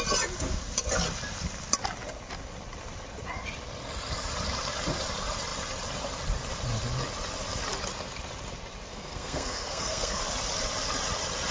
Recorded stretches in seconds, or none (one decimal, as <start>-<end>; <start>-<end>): 0.0-8.9; 10.2-11.5